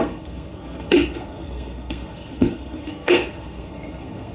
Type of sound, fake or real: fake